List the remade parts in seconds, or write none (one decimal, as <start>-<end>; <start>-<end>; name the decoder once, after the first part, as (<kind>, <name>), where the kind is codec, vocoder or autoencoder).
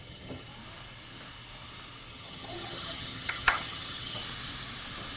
0.0-0.5 (vocoder, HiFi-GAN); 2.1-4.2